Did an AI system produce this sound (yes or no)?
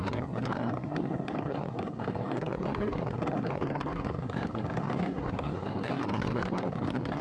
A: yes